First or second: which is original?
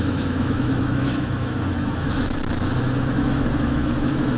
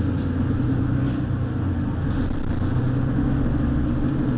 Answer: second